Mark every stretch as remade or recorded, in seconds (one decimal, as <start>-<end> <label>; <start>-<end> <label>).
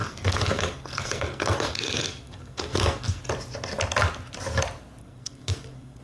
0.0-3.2 remade; 3.2-5.0 recorded; 5.0-6.0 remade